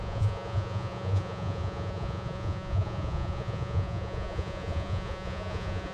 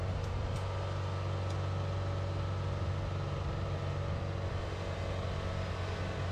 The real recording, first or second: second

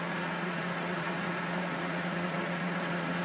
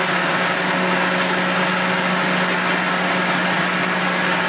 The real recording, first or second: second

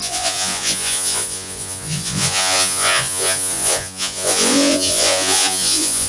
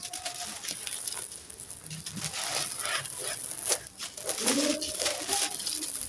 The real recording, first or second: second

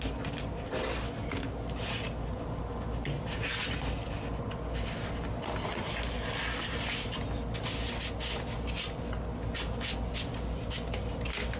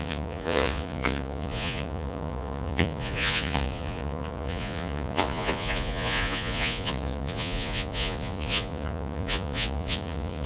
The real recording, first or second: first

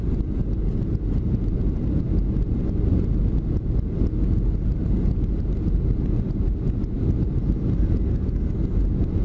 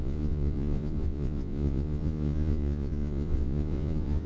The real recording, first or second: first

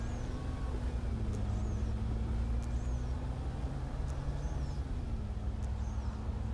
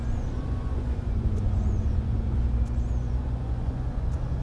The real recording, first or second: first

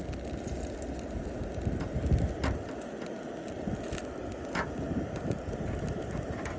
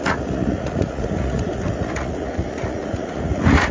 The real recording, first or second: first